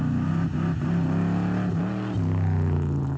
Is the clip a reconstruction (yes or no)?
no